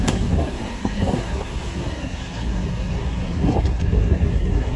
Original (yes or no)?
no